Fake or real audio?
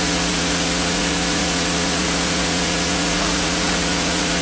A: fake